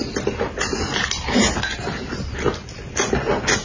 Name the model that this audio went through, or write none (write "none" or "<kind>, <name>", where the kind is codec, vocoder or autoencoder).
none